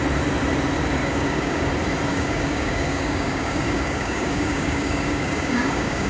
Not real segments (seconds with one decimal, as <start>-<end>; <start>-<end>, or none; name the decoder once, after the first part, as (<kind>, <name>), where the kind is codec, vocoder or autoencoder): 1.0-1.7 (codec, DAC); 2.1-6.1